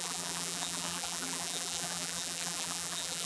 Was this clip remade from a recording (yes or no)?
yes